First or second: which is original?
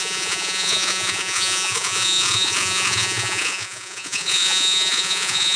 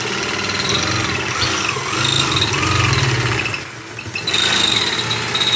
second